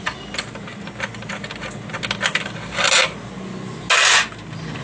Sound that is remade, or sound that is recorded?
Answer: recorded